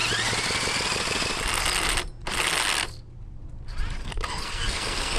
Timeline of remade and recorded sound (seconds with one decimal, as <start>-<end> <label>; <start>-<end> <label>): 0.0-4.0 recorded; 4.0-5.2 remade